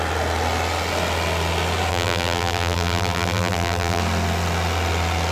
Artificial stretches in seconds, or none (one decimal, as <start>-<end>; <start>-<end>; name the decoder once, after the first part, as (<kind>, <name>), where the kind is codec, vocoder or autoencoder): 1.9-4.0 (vocoder, BigVGAN v2)